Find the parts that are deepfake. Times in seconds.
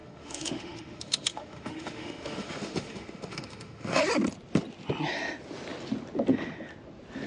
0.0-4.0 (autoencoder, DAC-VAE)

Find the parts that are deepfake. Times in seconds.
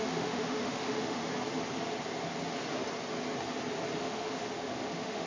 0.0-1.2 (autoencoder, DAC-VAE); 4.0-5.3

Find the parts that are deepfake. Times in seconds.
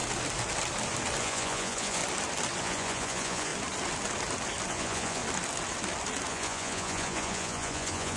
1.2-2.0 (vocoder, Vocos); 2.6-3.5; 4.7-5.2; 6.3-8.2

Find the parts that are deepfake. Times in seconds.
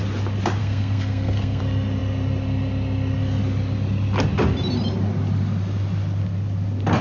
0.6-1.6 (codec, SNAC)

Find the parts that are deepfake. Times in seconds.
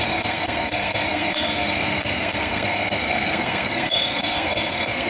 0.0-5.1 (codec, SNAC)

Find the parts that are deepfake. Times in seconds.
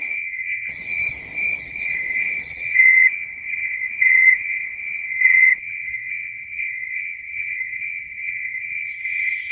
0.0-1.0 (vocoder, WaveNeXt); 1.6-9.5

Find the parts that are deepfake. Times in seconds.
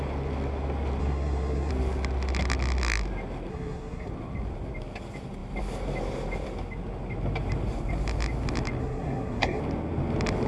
1.0-1.7 (codec, SNAC); 3.5-4.1; 8.8-9.6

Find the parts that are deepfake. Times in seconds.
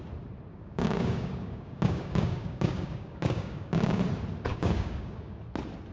0.5-4.0 (codec, DAC); 4.5-5.4